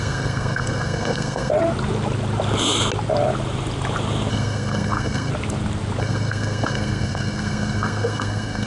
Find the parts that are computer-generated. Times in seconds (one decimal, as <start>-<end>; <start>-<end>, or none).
0.0-1.5; 4.3-5.3; 6.0-8.7

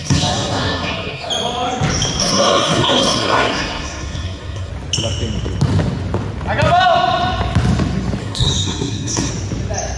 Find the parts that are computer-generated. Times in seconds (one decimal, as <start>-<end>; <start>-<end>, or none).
0.0-1.3; 2.2-4.7; 8.2-9.3

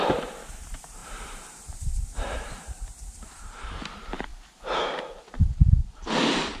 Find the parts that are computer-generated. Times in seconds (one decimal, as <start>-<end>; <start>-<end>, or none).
0.0-4.3; 5.1-6.6

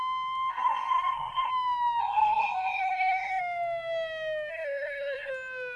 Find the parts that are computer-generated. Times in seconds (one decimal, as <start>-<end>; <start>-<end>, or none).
0.5-1.5; 2.0-3.4; 4.5-5.3

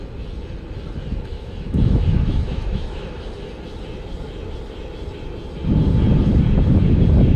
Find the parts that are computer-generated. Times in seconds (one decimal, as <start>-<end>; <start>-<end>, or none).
1.3-3.2

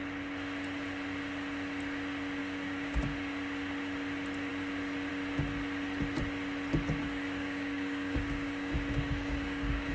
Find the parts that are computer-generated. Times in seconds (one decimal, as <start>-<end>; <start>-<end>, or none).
2.4-3.0; 7.0-9.9

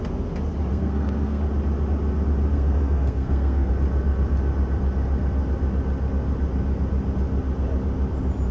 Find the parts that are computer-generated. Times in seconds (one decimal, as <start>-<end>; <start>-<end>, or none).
0.7-1.4; 2.5-3.7

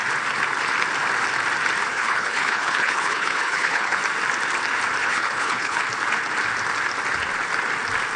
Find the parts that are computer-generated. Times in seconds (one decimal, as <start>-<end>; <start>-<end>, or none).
1.9-4.0; 5.0-5.8